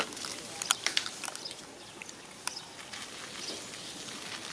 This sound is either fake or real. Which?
real